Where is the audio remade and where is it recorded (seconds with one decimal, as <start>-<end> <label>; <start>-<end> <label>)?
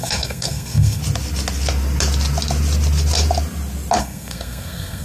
0.0-1.0 remade; 1.0-4.0 recorded; 4.0-5.0 remade